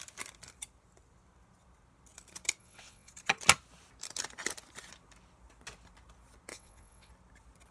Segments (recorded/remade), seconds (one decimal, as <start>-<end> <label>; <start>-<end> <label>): 0.0-2.6 recorded; 2.6-3.1 remade; 3.1-6.5 recorded; 6.5-7.1 remade; 7.1-7.7 recorded